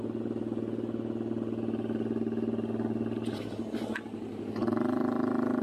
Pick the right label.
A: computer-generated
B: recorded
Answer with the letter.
B